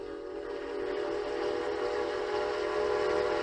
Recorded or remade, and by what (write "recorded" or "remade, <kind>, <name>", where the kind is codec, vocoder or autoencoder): recorded